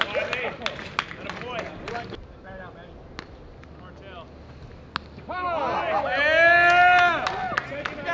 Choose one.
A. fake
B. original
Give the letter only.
B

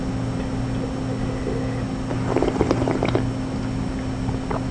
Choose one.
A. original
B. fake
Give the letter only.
A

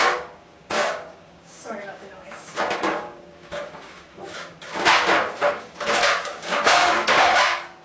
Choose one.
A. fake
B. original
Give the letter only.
A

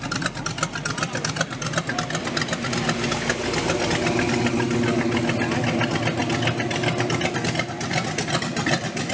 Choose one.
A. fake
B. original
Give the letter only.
B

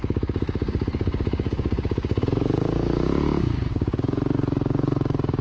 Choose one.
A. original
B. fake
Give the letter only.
B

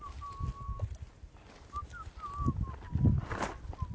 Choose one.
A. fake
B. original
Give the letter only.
B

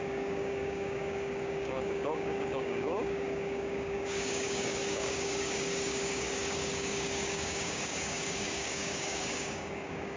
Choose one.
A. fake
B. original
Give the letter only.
A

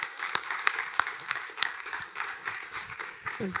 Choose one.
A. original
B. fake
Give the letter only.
B